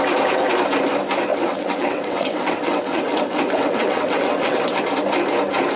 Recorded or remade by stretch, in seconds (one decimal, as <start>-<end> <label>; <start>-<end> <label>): 0.0-1.3 recorded; 1.3-4.8 remade; 4.8-5.8 recorded